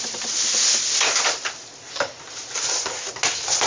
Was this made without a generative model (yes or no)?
yes